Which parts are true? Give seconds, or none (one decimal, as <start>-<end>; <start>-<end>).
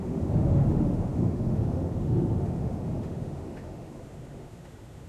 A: none